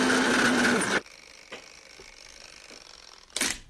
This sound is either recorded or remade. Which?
recorded